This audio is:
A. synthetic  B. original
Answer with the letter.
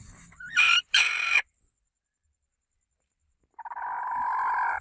B